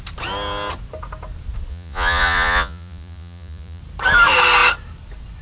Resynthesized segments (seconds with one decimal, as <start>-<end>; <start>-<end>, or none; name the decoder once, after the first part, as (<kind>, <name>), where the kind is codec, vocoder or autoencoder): 1.7-3.8 (vocoder, Vocos)